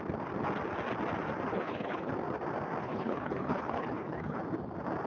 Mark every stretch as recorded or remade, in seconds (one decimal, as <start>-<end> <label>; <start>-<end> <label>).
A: 0.0-1.5 recorded; 1.5-2.1 remade; 2.1-2.8 recorded; 2.8-4.4 remade; 4.4-5.1 recorded